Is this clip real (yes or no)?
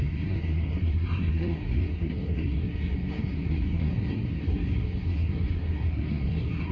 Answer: no